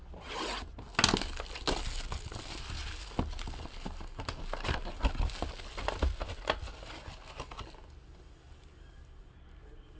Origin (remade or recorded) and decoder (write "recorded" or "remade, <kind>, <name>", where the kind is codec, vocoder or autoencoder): recorded